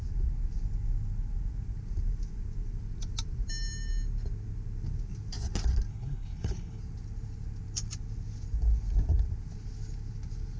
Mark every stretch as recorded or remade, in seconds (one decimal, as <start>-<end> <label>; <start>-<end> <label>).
0.0-5.9 recorded; 5.9-6.8 remade; 6.8-10.6 recorded